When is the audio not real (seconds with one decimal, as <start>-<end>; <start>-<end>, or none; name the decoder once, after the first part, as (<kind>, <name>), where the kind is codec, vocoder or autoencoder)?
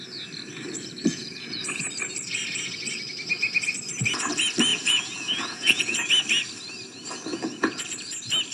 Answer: 1.0-1.9 (vocoder, Vocos); 4.7-6.1; 7.3-7.8